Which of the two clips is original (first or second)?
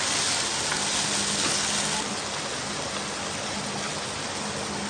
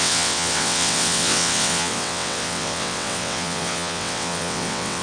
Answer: first